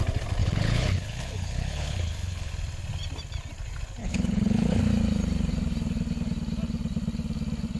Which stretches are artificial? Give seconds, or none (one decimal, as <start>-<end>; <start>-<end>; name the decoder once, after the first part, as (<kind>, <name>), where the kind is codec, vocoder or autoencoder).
0.4-2.5 (codec, HILCodec); 4.0-4.8